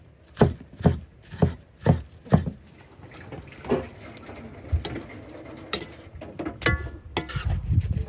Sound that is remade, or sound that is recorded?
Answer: recorded